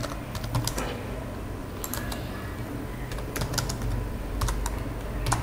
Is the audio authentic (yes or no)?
yes